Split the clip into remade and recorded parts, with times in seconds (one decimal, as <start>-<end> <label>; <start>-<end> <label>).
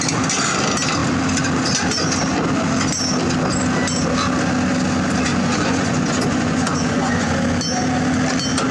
0.0-5.3 recorded; 5.3-7.3 remade; 7.3-8.7 recorded